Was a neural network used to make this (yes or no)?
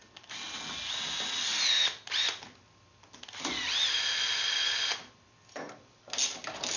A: no